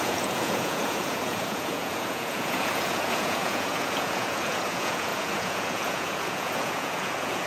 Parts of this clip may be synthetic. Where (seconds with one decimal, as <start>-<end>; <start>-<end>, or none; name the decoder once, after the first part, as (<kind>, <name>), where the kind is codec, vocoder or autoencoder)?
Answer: 0.0-7.5 (vocoder, Vocos)